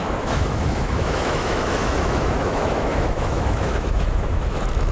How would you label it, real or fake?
fake